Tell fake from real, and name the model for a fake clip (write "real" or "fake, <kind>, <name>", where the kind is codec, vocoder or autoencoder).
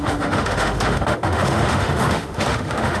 fake, autoencoder, DAC-VAE